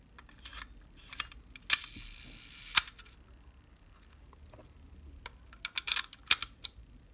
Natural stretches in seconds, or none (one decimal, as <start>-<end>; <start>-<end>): 0.0-7.1